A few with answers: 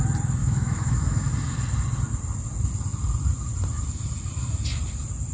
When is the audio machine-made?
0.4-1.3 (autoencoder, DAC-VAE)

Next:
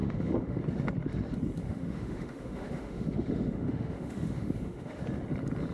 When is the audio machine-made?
0.0-0.6 (autoencoder, DAC-VAE); 1.6-5.0

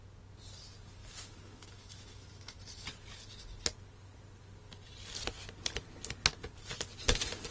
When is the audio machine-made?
1.0-2.6 (autoencoder, DAC-VAE)